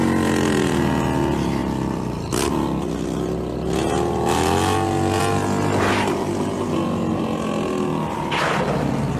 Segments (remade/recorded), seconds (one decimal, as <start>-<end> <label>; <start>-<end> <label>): 0.0-9.2 recorded